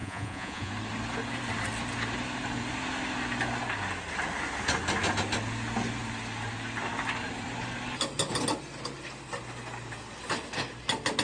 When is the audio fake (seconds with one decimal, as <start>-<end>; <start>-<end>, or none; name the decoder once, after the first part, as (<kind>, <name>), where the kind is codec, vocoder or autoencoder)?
0.0-0.7 (vocoder, Vocos)